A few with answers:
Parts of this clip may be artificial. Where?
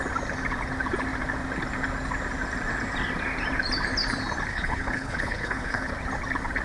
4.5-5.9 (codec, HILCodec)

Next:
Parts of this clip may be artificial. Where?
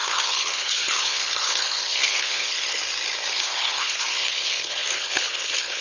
0.0-2.8 (codec, HILCodec); 3.3-5.8